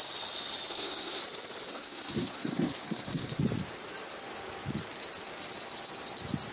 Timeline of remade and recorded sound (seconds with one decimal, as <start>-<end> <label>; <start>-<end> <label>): 0.0-0.7 recorded; 0.7-1.2 remade; 1.2-1.7 recorded; 1.7-3.4 remade; 3.4-6.5 recorded